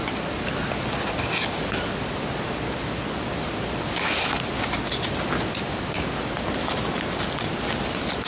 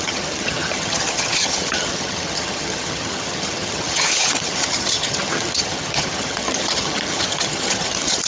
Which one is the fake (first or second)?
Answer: second